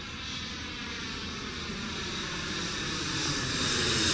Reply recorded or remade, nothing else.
recorded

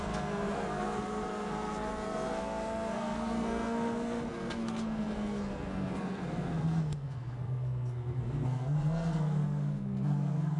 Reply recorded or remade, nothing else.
remade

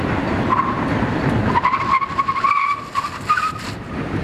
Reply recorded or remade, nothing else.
recorded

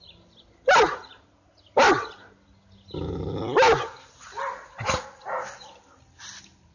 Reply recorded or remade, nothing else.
recorded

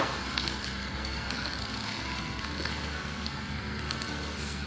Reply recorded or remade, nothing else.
remade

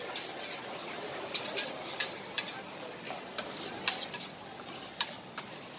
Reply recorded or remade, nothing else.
recorded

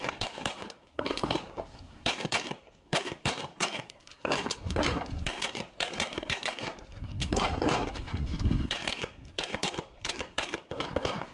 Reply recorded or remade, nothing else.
remade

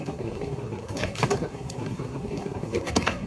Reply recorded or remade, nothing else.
remade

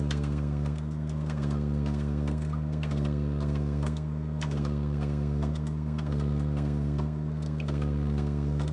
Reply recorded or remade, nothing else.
remade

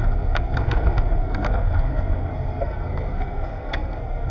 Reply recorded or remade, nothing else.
remade